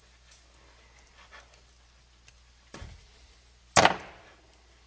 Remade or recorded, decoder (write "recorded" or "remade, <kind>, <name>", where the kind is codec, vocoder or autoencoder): recorded